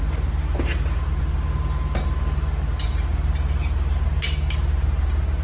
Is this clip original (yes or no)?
yes